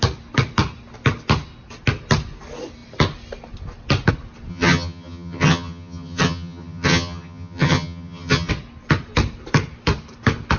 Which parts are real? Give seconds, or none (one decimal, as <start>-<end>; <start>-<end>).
0.0-4.5; 8.5-10.6